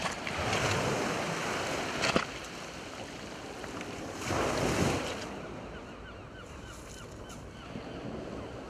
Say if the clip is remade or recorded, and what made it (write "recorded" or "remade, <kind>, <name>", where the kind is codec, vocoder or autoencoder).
recorded